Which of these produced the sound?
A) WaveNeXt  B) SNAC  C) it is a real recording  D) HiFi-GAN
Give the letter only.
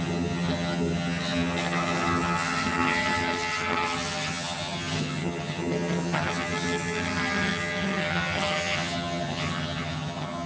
D